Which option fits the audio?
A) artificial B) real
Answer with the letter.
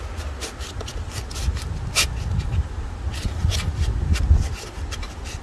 B